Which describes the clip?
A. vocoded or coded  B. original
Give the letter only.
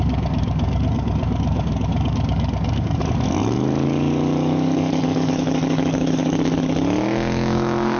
A